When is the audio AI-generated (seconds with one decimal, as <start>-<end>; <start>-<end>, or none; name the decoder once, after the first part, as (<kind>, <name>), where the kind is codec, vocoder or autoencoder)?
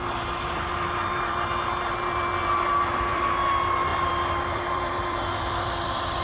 2.4-3.2 (vocoder, BigVGAN v2); 3.9-6.2